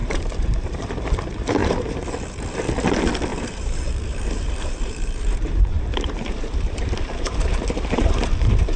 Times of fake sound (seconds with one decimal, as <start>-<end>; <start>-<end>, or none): 0.0-0.9; 3.3-8.8

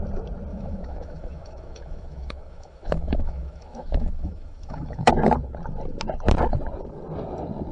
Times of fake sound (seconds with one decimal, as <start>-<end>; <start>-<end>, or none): 0.5-5.1

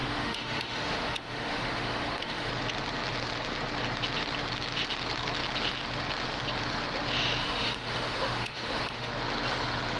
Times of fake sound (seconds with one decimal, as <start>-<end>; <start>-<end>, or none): 0.0-2.5; 7.4-9.1

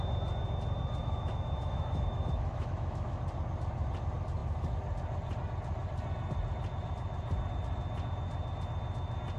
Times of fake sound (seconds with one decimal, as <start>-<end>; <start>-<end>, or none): 1.0-3.2

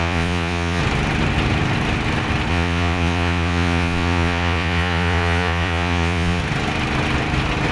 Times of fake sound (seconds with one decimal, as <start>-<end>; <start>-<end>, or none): 0.0-0.8; 2.5-6.4

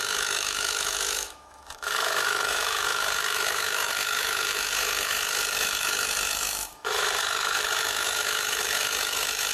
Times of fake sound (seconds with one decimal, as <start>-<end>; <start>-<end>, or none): 0.0-9.5

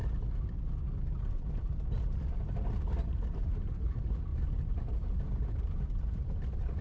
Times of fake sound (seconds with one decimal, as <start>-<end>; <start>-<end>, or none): 1.3-6.8

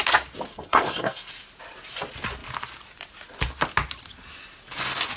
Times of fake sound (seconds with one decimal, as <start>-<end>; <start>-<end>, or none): 0.5-1.3